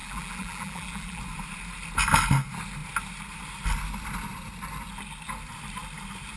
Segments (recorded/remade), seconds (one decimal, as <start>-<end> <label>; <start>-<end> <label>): 0.0-1.2 remade; 1.2-6.4 recorded

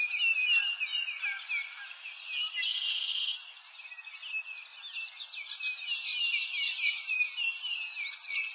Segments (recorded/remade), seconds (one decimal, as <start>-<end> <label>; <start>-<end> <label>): 0.0-2.7 recorded; 2.7-3.2 remade; 3.2-4.7 recorded; 4.7-8.1 remade; 8.1-8.5 recorded

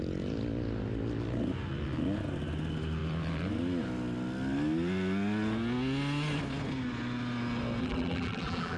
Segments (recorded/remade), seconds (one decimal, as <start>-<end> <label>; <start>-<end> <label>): 0.0-7.8 recorded; 7.8-8.8 remade